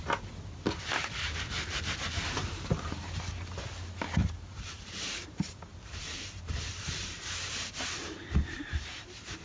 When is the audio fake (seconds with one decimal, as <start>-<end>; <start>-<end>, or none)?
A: 1.0-3.1; 4.2-9.4